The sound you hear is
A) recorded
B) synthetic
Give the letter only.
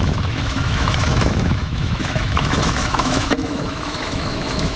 B